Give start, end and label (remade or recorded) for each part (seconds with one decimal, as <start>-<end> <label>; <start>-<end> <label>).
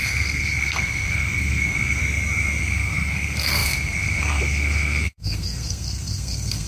0.0-2.0 remade; 2.0-2.6 recorded; 2.6-6.7 remade